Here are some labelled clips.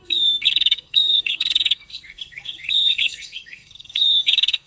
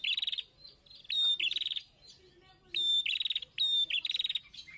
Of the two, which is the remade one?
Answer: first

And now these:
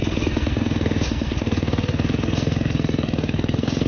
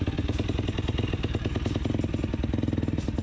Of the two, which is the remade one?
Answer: first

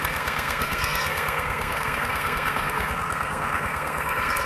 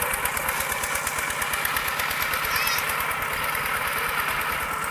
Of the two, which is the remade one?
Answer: first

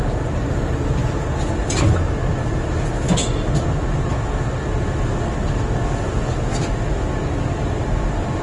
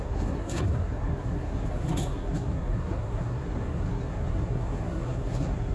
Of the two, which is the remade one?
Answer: second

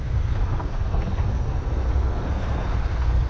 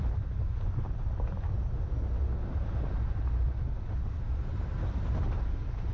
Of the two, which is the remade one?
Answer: first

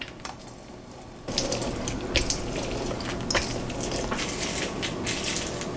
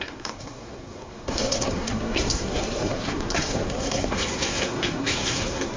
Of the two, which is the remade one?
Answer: second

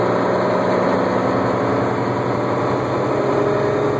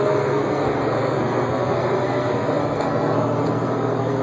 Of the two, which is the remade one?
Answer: second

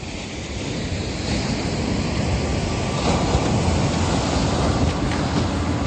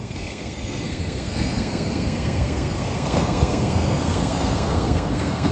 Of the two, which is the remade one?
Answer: second